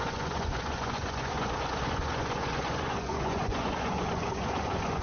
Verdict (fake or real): fake